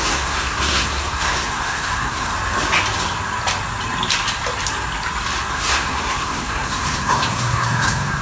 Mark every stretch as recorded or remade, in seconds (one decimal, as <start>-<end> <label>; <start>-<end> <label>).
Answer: 0.0-2.3 remade; 2.3-5.5 recorded; 5.5-8.2 remade